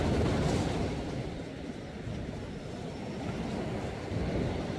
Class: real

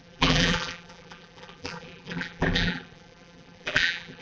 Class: fake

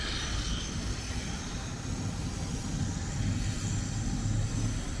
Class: real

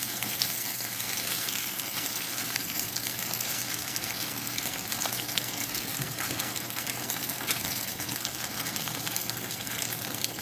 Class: fake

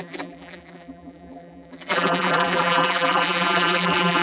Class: fake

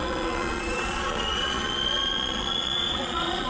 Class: fake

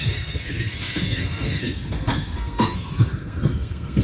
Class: fake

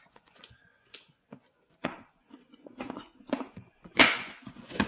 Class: fake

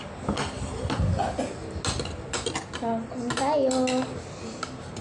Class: real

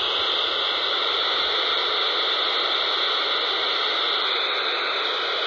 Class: real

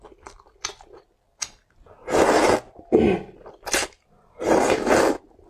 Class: real